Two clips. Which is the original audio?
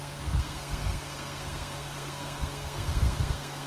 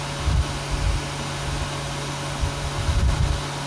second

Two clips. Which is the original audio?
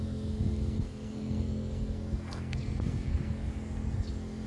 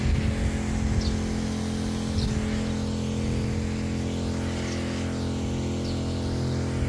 second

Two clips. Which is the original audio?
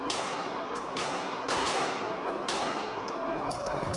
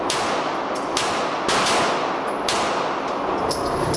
second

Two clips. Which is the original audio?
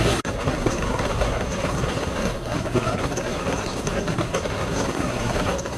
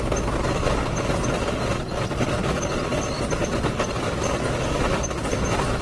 second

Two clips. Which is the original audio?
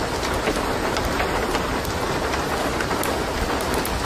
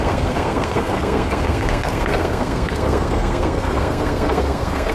first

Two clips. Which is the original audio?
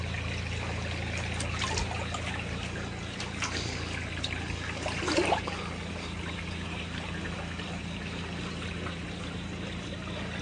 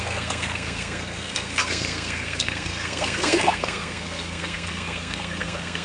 first